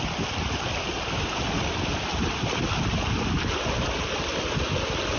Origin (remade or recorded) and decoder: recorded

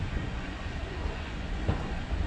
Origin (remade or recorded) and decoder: remade, vocoder, Vocos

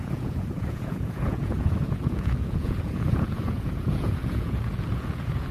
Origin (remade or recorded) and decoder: remade, vocoder, Vocos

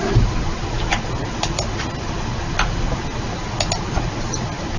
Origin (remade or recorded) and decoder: recorded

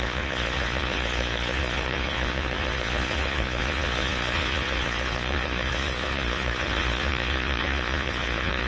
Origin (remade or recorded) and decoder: remade, vocoder, Vocos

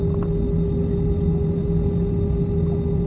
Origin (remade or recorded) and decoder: recorded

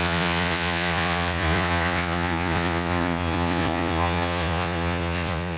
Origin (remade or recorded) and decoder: remade, vocoder, Vocos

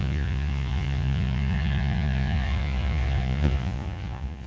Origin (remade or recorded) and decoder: remade, vocoder, Vocos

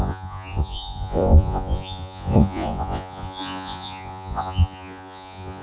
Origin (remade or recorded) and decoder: remade, vocoder, Vocos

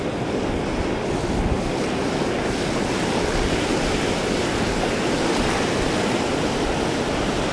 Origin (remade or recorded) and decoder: recorded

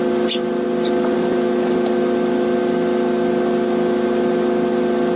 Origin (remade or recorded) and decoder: recorded